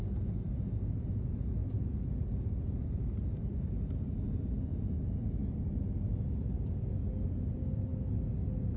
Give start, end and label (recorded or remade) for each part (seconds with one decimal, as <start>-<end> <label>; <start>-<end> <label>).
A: 0.0-8.8 recorded